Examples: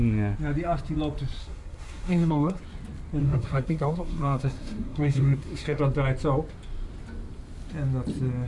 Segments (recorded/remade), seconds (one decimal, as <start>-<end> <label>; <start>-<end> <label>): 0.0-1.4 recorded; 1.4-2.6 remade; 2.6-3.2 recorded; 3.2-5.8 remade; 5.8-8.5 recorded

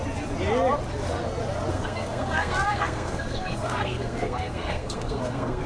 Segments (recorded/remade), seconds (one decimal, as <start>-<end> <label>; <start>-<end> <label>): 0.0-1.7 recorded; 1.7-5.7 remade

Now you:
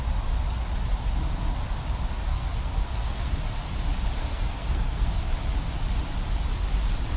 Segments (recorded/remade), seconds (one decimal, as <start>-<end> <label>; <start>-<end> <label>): 0.0-2.3 recorded; 2.3-3.3 remade; 3.3-4.2 recorded; 4.2-5.3 remade; 5.3-7.2 recorded

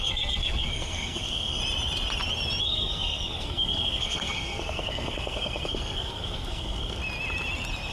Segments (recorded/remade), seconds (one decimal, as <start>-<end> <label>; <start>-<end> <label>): 0.0-1.6 remade; 1.6-2.6 recorded; 2.6-7.0 remade; 7.0-7.9 recorded

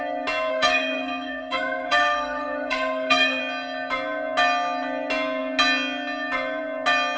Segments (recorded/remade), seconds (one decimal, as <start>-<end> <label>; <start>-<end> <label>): 0.0-0.5 recorded; 0.5-3.4 remade; 3.4-7.2 recorded

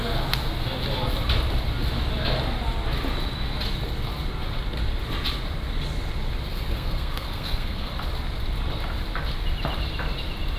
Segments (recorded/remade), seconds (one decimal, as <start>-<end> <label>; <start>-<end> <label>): 0.0-6.5 recorded; 6.5-7.9 remade; 7.9-10.6 recorded

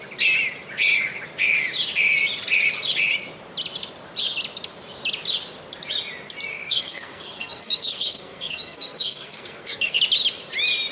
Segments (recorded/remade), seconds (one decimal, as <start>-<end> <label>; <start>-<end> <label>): 0.0-6.5 recorded; 6.5-10.0 remade; 10.0-10.9 recorded

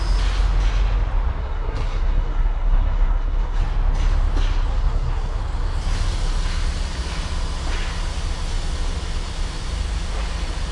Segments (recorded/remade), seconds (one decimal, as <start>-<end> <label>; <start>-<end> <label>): 0.0-1.4 recorded; 1.4-3.6 remade; 3.6-4.7 recorded; 4.7-5.4 remade; 5.4-10.7 recorded